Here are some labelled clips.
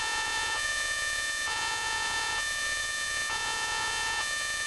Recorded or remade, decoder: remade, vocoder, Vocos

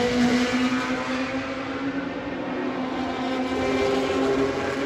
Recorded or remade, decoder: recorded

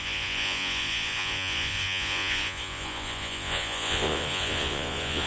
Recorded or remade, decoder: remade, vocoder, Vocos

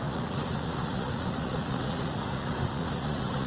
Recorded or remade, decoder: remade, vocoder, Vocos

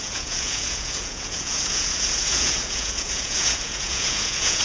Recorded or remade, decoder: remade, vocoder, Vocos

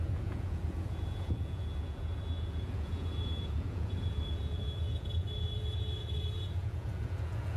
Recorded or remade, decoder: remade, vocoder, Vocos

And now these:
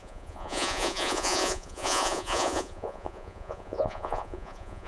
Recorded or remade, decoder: remade, vocoder, Vocos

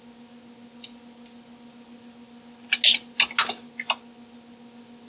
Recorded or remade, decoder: recorded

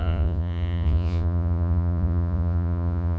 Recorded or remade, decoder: remade, vocoder, Vocos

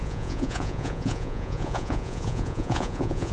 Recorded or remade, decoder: remade, vocoder, Vocos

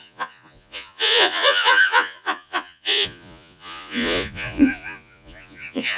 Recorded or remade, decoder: remade, vocoder, Vocos